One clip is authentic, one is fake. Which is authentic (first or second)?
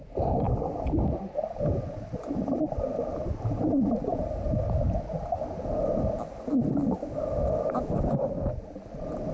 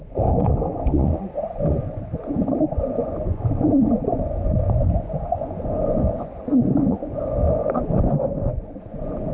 first